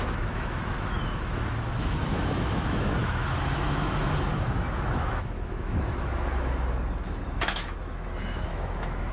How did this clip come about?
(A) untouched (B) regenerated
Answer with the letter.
B